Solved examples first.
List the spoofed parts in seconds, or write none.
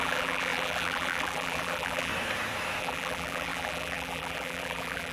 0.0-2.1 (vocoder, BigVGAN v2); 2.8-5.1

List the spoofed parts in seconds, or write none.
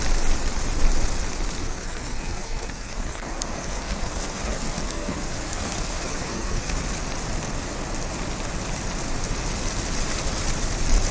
1.6-6.7 (codec, SNAC)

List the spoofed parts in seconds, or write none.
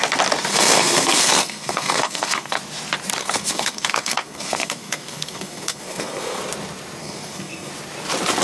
0.5-2.6 (codec, SNAC); 3.2-6.4; 7.0-7.7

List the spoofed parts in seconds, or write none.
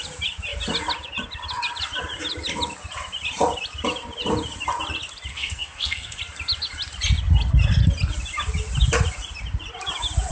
5.3-6.2 (codec, SNAC)